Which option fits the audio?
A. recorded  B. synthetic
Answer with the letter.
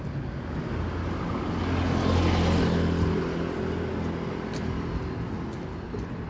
A